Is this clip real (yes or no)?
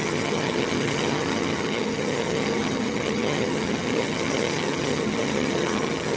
no